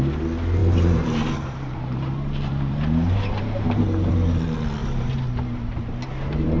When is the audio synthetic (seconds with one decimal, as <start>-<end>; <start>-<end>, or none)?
0.6-4.1; 4.8-6.6